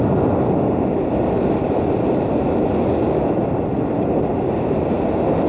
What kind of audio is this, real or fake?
real